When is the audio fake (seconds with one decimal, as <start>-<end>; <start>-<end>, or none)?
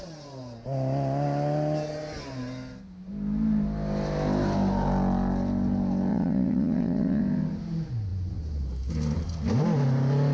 6.1-7.2